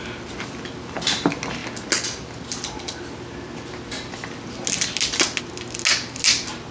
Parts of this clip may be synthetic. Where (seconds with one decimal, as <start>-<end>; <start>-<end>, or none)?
none